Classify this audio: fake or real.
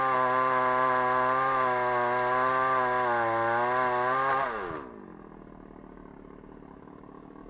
real